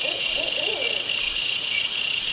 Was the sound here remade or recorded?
remade